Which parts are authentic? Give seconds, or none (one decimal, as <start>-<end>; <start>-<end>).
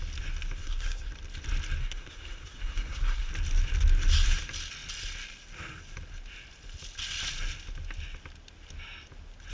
0.0-0.6; 1.1-1.8; 3.3-9.5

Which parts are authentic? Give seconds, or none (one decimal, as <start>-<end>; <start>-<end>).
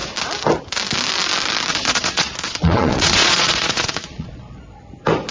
0.0-1.7; 4.8-5.3